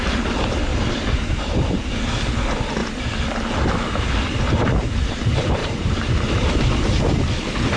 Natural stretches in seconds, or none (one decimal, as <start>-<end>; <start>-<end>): 0.0-0.7; 2.1-2.8; 4.1-5.6; 6.5-7.8